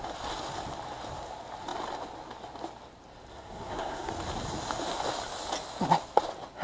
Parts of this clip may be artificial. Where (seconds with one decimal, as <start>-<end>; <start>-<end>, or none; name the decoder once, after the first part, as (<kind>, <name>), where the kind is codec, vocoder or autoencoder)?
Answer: 3.3-4.1 (codec, SNAC)